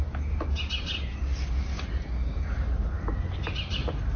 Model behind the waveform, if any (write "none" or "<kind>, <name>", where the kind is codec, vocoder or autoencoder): none